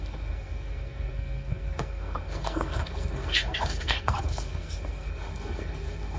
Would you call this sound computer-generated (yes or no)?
yes